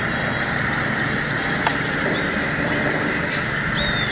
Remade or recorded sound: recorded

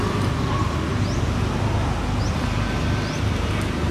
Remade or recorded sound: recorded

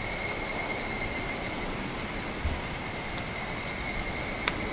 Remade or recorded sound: recorded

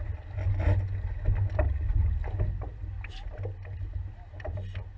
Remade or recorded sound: recorded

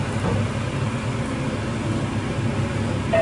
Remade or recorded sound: recorded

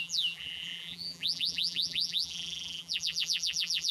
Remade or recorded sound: remade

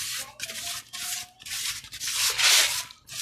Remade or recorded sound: recorded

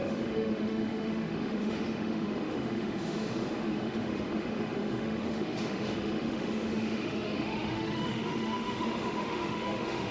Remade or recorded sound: remade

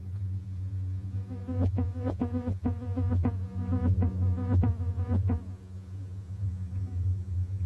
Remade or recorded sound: remade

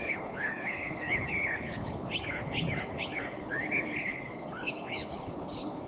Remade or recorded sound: remade